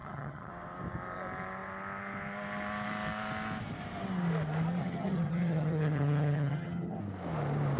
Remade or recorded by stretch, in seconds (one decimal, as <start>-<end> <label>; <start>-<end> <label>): 0.0-0.5 remade; 0.5-4.8 recorded; 4.8-7.0 remade; 7.0-7.8 recorded